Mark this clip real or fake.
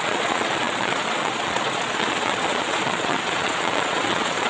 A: fake